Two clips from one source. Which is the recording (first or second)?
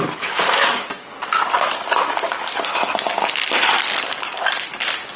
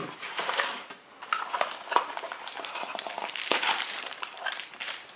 first